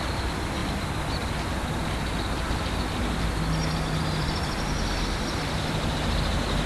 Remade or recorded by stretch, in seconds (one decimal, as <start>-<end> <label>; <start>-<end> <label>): 0.0-6.7 recorded